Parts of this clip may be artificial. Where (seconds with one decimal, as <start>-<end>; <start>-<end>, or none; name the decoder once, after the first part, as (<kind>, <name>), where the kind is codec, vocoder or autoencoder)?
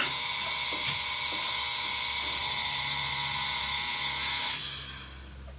2.4-3.1 (vocoder, BigVGAN v2)